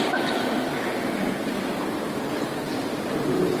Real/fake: real